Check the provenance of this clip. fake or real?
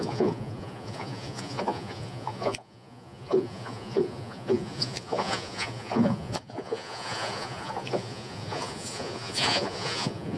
fake